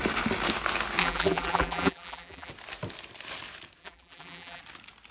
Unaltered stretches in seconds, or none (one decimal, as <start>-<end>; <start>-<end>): 0.0-1.0; 2.5-3.8; 4.6-5.1